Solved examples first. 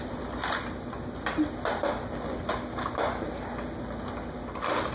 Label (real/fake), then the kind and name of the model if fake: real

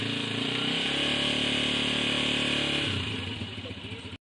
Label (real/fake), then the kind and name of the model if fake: real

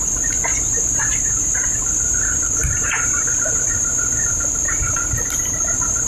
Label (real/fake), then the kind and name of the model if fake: fake, vocoder, BigVGAN v2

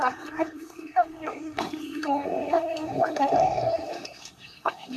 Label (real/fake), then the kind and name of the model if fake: fake, codec, SNAC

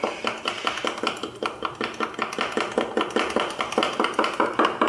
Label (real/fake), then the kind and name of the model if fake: real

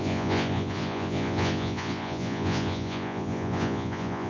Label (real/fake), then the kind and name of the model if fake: fake, vocoder, Vocos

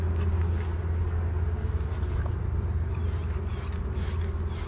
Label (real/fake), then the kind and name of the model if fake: real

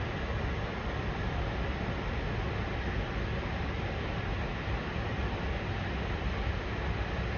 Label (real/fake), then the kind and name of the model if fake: real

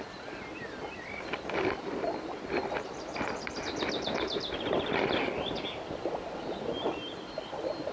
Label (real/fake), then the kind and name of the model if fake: real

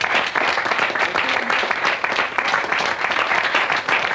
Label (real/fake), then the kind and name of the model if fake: fake, vocoder, BigVGAN v2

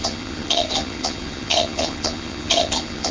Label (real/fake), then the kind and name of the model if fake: fake, vocoder, HiFi-GAN